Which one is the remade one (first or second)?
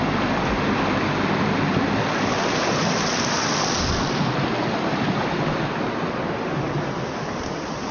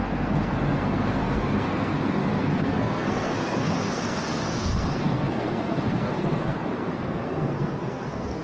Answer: second